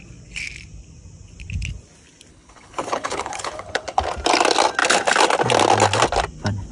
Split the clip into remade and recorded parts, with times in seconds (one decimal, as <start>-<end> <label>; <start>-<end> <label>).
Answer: 0.0-2.3 recorded; 2.3-4.0 remade; 4.0-6.7 recorded